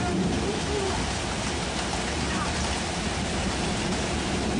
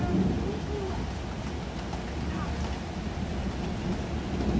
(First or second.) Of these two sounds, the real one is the second